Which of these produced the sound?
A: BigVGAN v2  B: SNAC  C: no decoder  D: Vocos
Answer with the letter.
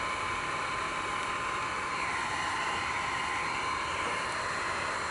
C